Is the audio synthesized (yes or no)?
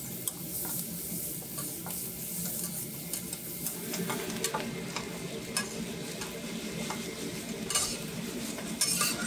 no